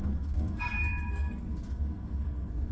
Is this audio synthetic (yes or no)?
yes